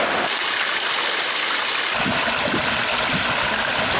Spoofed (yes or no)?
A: no